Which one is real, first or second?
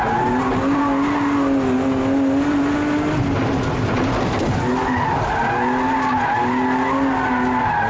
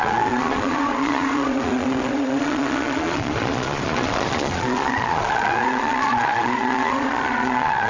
first